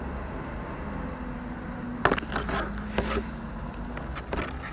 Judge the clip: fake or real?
real